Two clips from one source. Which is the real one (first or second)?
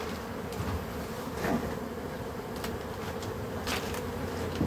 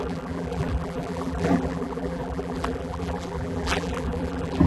first